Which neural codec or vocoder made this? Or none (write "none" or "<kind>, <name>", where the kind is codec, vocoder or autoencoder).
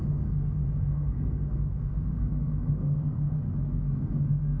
codec, SNAC